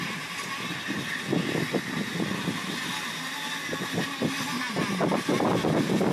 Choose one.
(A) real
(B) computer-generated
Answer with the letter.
A